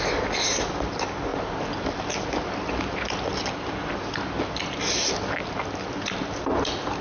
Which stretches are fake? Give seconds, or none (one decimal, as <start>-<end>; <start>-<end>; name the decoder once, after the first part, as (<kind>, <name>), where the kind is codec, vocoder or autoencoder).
none